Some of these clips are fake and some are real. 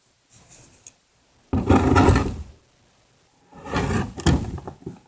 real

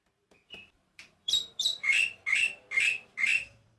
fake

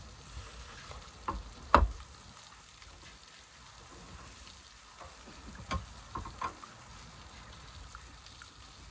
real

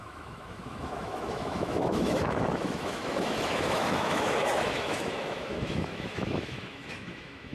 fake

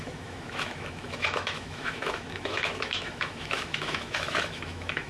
fake